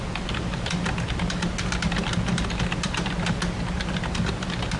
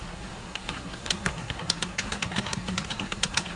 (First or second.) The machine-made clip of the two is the second